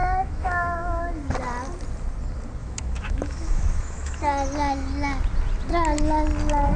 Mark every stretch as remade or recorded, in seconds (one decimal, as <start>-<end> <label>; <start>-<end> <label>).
0.0-1.1 remade; 1.1-2.6 recorded; 2.6-4.2 remade; 4.2-6.8 recorded